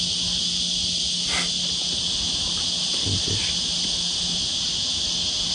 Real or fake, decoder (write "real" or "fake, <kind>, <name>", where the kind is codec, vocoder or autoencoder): real